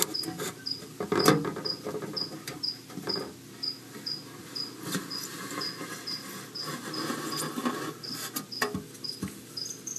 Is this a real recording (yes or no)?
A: yes